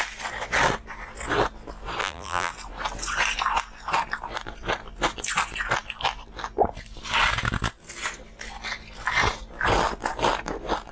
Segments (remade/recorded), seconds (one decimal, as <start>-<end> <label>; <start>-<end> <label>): 0.0-2.0 recorded; 2.0-2.5 remade; 2.5-10.9 recorded